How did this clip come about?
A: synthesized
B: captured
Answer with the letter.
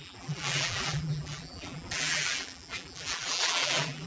A